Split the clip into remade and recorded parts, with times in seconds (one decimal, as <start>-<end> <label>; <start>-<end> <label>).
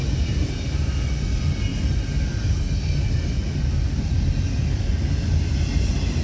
0.0-6.2 recorded